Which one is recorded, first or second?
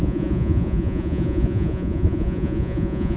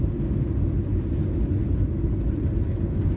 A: second